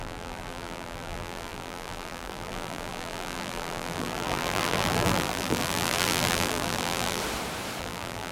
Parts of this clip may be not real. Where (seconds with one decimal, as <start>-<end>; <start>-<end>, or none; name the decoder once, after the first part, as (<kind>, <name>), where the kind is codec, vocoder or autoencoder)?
0.0-7.2 (vocoder, BigVGAN v2); 7.8-8.3